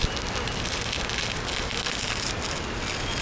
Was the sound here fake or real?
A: real